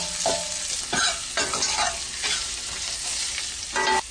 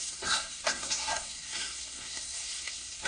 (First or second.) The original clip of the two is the first